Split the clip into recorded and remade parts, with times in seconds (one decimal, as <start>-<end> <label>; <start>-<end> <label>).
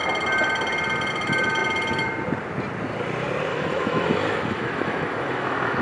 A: 0.0-3.5 recorded; 3.5-5.8 remade